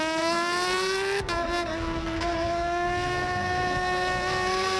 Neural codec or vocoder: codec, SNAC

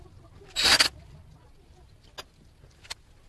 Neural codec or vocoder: none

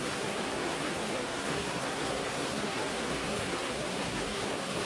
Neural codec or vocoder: codec, SNAC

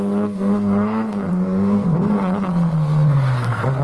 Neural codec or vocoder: codec, SNAC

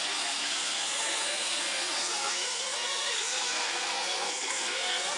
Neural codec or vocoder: codec, SNAC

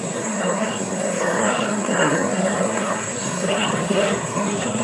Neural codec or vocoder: codec, SNAC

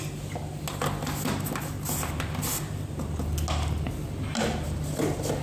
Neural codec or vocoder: none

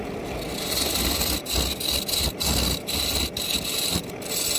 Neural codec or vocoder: none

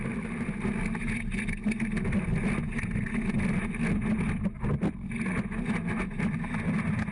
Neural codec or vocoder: none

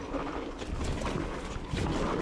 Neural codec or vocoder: none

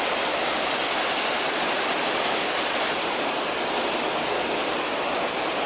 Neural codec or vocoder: none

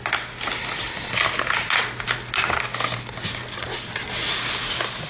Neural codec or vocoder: none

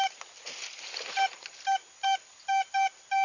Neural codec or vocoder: none